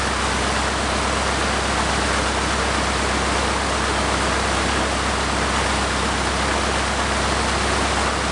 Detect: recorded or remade recorded